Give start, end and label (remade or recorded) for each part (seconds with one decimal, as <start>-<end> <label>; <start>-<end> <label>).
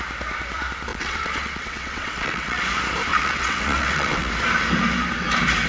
0.0-0.9 recorded; 0.9-2.6 remade; 2.6-3.1 recorded; 3.1-4.3 remade; 4.3-5.7 recorded